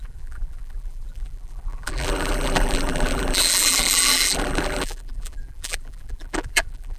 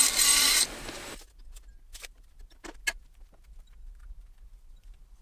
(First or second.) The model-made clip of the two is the first